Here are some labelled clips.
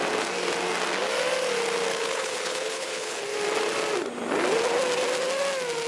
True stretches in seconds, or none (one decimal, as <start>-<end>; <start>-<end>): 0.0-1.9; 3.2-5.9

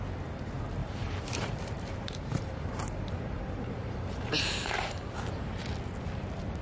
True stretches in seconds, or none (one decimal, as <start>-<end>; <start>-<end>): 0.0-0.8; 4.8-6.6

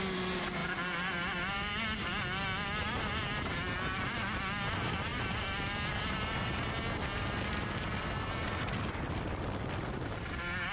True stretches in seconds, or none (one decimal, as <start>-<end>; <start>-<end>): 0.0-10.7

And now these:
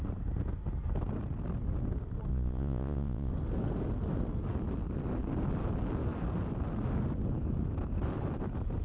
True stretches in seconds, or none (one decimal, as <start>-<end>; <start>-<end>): 0.0-2.3; 3.3-8.8

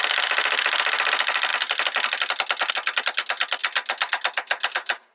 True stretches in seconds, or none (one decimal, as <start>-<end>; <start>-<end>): 0.0-5.1

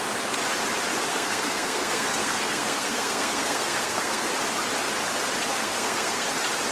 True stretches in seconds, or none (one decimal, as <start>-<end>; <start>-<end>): 0.0-1.1; 4.3-5.5; 6.3-6.7